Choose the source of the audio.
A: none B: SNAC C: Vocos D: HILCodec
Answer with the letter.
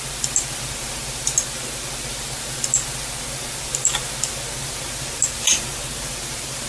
A